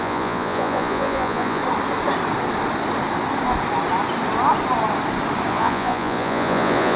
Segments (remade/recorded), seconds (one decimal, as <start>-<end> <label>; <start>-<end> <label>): 0.0-1.6 remade; 1.6-5.5 recorded; 5.5-7.0 remade